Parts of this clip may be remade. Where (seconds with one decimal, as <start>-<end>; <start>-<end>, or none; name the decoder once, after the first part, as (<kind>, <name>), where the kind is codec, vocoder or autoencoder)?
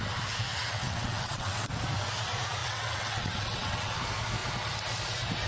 0.5-1.7 (vocoder, WaveNeXt); 2.6-3.9